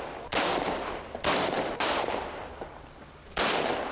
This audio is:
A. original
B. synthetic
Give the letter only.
A